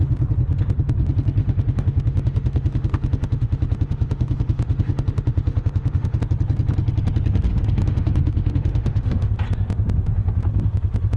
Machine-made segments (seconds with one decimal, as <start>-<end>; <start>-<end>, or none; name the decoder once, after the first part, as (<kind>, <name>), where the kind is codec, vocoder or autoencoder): 1.4-6.2 (autoencoder, DAC-VAE); 7.5-9.3